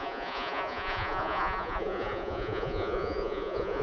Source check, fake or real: fake